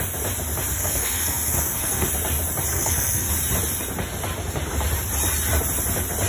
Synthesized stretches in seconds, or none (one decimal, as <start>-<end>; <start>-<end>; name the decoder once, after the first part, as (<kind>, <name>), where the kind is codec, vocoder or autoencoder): 0.7-2.1 (codec, SNAC); 2.7-3.3